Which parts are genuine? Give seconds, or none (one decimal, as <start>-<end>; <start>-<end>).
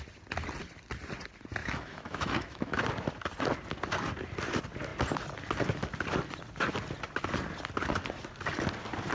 0.0-1.6; 2.8-9.1